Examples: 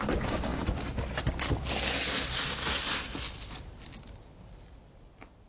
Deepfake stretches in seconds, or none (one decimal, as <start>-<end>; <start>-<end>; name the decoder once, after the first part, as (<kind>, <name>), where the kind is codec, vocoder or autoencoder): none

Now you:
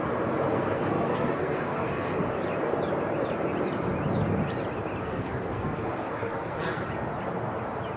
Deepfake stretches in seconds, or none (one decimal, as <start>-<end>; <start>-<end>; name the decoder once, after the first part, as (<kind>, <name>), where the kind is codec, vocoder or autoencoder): 0.5-2.3 (codec, SNAC); 5.0-6.9

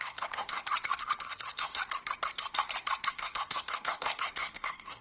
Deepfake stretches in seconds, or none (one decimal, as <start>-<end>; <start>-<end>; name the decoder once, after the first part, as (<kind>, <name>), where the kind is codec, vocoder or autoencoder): 0.0-0.6 (codec, SNAC); 1.2-1.8; 3.1-5.0